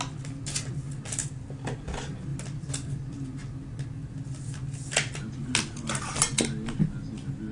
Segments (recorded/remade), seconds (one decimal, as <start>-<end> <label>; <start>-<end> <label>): 0.0-7.5 recorded